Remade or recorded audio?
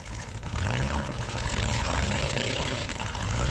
remade